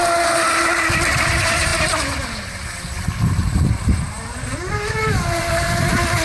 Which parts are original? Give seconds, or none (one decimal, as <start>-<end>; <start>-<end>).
0.0-6.2